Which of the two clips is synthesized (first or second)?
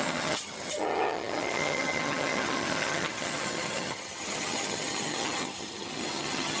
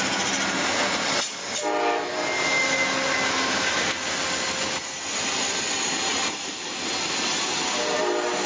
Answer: first